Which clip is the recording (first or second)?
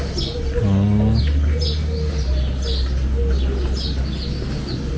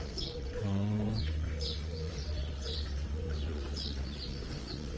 first